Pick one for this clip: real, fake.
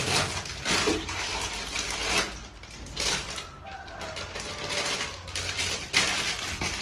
real